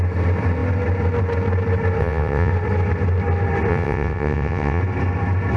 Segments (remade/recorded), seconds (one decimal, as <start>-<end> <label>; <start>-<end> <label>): 0.0-2.0 recorded; 2.0-2.5 remade; 2.5-3.7 recorded; 3.7-4.8 remade; 4.8-5.6 recorded